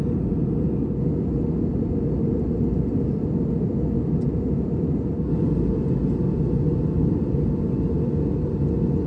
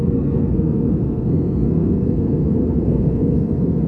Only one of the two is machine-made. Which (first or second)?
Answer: second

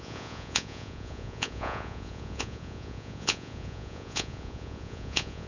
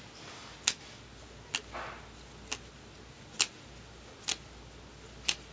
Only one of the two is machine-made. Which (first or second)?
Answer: first